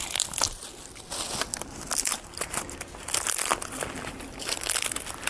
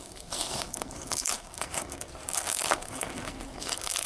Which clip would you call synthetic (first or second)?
second